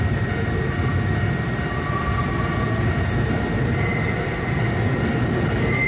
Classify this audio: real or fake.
fake